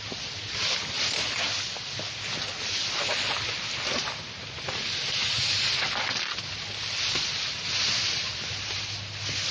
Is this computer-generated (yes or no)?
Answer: no